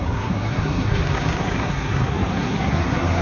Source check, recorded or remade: remade